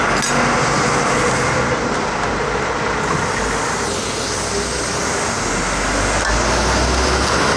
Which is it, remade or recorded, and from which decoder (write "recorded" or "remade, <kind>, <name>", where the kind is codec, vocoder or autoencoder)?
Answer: recorded